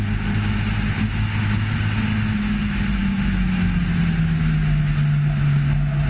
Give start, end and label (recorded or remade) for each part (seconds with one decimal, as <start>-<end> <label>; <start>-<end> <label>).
0.0-3.0 recorded; 3.0-3.8 remade; 3.8-6.1 recorded